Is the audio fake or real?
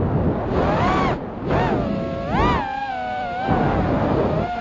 real